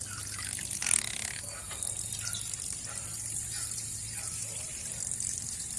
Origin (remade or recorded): recorded